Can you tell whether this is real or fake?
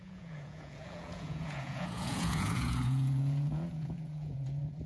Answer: fake